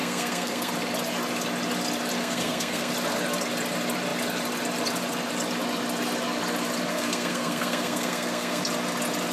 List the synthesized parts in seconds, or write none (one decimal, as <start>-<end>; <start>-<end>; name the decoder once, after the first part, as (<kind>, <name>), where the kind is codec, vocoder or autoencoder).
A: 0.0-0.7 (codec, SNAC); 2.2-2.9; 6.9-8.6